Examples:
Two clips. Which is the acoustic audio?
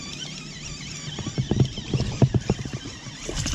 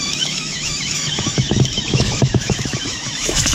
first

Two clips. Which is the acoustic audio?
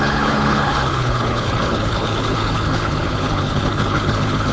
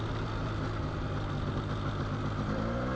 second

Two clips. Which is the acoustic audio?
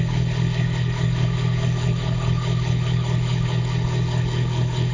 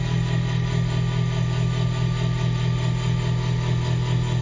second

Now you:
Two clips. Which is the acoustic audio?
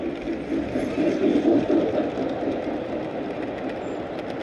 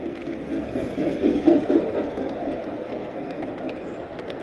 first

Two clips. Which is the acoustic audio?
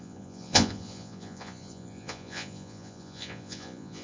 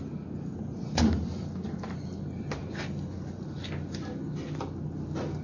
second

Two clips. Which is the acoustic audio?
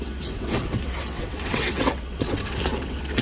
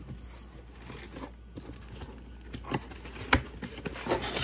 second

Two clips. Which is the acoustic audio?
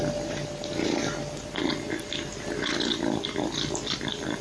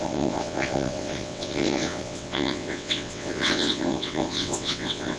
first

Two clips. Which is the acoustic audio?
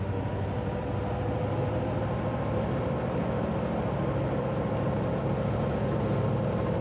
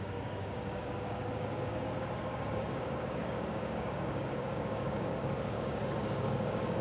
first